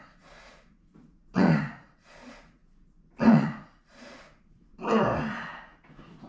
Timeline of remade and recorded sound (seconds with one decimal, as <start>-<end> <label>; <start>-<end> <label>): 0.0-2.6 remade; 2.6-3.3 recorded; 3.3-4.7 remade; 4.7-5.3 recorded; 5.3-6.3 remade